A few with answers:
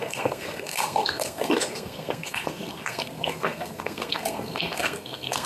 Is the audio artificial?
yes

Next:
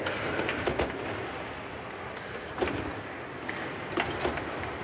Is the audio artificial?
no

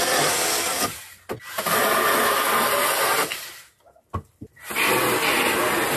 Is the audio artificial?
no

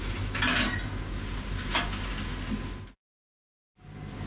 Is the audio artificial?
no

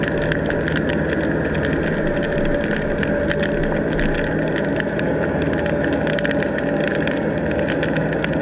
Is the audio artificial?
no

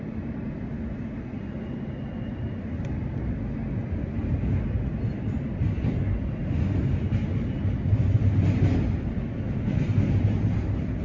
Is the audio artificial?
no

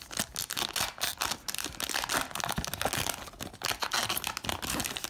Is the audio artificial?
no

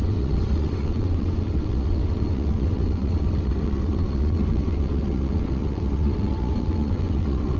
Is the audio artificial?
yes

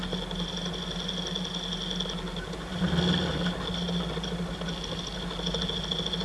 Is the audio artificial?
no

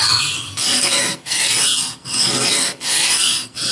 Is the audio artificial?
yes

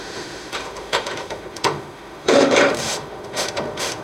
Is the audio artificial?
yes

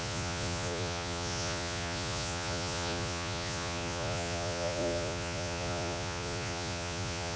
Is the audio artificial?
yes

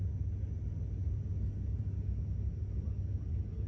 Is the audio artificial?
no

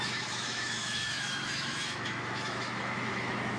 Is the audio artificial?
yes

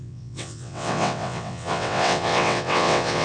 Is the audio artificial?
yes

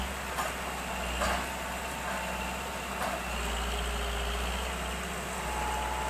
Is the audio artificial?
no